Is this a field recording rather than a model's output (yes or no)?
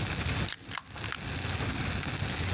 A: yes